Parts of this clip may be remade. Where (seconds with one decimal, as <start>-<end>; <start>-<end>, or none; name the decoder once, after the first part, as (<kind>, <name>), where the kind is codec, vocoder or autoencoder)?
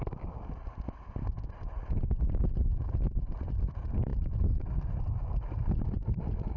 none